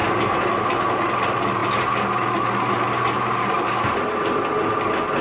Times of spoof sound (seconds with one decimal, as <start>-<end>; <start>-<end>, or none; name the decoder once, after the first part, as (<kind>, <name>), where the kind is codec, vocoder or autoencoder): none